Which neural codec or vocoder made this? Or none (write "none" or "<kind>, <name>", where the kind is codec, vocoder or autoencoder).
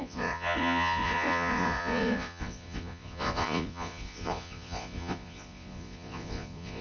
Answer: vocoder, Vocos